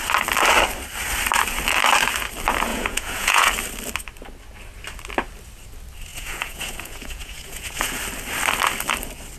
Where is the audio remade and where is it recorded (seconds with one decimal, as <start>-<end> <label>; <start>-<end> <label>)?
0.0-2.7 recorded; 2.7-3.5 remade; 3.5-6.1 recorded; 6.1-8.0 remade; 8.0-9.4 recorded